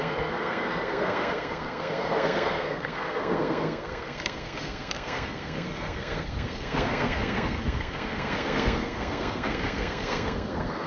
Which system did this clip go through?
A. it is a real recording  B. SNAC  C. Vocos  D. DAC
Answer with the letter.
B